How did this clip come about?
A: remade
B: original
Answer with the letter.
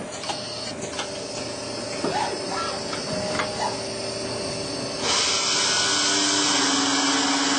B